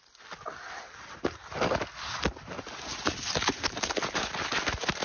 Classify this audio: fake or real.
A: real